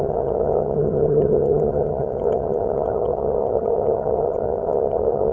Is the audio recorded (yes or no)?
no